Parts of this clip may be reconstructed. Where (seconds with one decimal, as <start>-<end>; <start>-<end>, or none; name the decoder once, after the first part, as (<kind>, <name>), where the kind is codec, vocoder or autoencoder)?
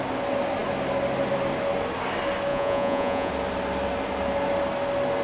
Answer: 2.5-3.3 (vocoder, Vocos)